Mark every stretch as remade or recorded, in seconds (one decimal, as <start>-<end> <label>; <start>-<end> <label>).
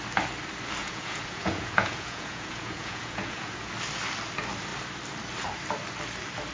0.0-0.8 recorded; 0.8-3.7 remade; 3.7-6.5 recorded